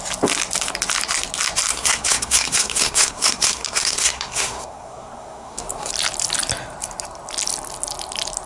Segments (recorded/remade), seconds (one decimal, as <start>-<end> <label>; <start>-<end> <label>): 0.0-1.7 recorded; 1.7-5.9 remade; 5.9-8.5 recorded